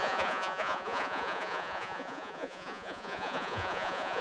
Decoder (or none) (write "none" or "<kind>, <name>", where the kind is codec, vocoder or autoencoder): vocoder, Vocos